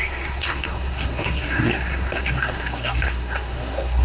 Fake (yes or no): yes